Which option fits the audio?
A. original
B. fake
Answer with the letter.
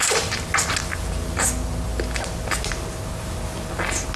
A